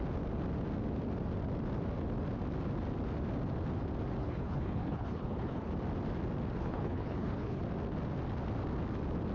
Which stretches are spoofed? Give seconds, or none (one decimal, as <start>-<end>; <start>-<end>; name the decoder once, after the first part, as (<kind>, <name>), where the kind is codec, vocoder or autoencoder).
4.2-5.7 (codec, HILCodec); 6.6-7.6